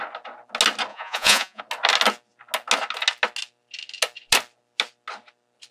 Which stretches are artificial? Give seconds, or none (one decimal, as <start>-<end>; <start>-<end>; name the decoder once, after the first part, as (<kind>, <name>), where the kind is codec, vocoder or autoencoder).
0.9-1.6 (vocoder, Vocos)